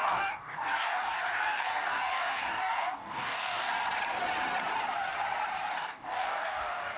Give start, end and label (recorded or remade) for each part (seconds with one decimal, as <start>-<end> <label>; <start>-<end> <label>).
0.0-3.7 remade; 3.7-5.7 recorded; 5.7-7.0 remade